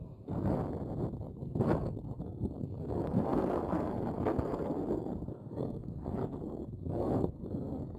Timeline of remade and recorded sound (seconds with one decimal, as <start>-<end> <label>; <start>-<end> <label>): 0.0-0.6 remade; 0.6-1.1 recorded; 1.1-8.0 remade